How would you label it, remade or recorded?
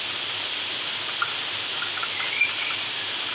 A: recorded